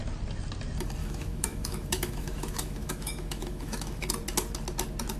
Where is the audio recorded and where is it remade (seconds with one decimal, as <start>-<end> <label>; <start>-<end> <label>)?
0.0-1.0 recorded; 1.0-4.1 remade; 4.1-5.2 recorded